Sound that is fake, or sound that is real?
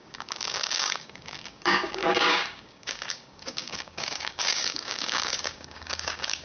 fake